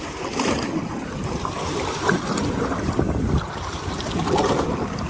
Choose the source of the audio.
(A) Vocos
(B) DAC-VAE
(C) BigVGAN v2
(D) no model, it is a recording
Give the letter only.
D